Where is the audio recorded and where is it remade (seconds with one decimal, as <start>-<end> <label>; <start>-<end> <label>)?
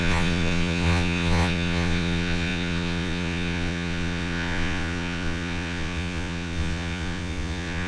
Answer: 0.0-7.9 remade